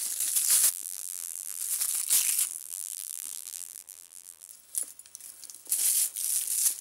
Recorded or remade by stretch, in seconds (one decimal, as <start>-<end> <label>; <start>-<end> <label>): 0.0-0.7 recorded; 0.7-1.6 remade; 1.6-2.5 recorded; 2.5-4.5 remade; 4.5-6.8 recorded